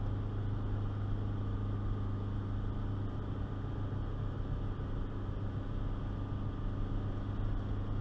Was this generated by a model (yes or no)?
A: no